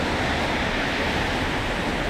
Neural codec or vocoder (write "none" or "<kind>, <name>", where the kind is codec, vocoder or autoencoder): none